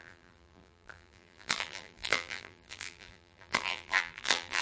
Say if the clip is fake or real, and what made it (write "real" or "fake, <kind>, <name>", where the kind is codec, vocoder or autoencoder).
fake, vocoder, BigVGAN v2